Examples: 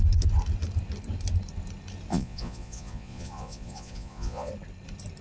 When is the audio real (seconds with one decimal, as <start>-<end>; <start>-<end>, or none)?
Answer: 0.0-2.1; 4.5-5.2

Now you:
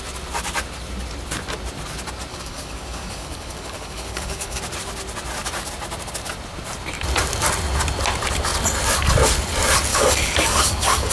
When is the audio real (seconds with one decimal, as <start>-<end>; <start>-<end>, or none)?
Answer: 0.0-2.3; 4.6-9.9

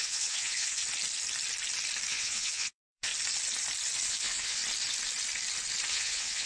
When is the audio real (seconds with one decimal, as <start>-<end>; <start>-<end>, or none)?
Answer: 0.8-2.1; 3.1-4.1; 4.6-5.9

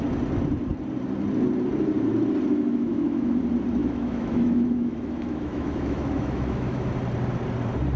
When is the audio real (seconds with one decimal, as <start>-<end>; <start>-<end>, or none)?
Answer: 0.0-2.5; 3.4-3.8; 6.9-8.0

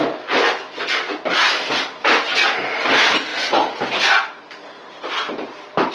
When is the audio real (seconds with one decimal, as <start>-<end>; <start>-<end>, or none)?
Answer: 0.0-5.9